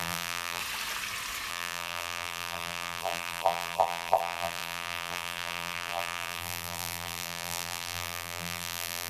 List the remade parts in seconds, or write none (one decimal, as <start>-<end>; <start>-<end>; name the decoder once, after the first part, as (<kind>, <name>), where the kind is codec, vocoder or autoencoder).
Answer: 0.0-0.6 (vocoder, BigVGAN v2); 1.5-9.1